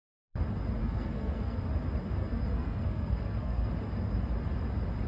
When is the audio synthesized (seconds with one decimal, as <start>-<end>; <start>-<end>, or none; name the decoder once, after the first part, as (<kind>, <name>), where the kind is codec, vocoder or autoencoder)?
0.8-1.6 (codec, SNAC); 2.2-3.7